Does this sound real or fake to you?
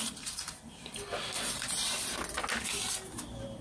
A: real